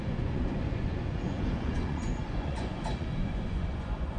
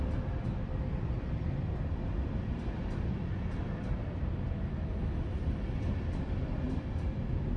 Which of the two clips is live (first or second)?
second